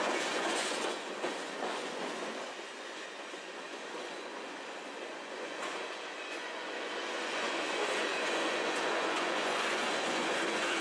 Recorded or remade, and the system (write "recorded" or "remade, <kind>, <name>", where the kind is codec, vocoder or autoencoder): remade, vocoder, Vocos